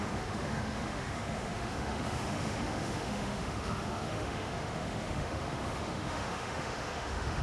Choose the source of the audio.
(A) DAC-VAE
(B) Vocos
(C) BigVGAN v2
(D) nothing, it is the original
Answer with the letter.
A